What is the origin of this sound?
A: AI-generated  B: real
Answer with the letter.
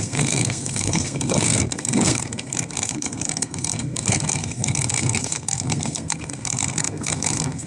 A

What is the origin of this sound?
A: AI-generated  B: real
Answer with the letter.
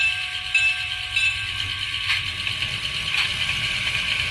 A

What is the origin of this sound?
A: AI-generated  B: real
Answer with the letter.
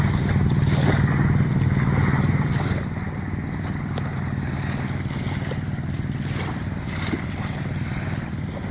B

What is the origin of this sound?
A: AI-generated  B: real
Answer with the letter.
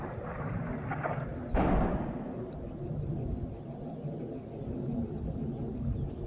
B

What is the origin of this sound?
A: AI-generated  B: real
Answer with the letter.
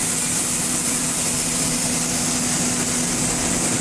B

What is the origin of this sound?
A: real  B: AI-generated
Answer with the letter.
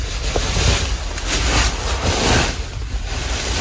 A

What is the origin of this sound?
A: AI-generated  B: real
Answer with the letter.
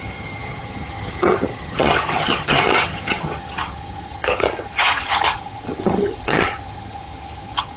A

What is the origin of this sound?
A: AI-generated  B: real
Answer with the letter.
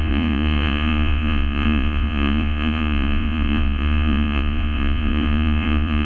A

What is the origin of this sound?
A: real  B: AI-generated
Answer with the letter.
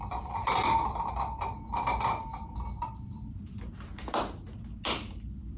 A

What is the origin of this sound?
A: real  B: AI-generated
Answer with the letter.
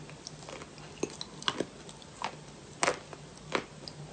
A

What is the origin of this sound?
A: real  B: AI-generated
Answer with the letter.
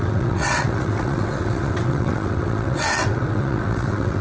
B